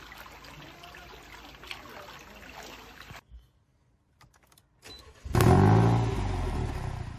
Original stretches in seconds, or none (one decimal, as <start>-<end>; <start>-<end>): 0.0-7.2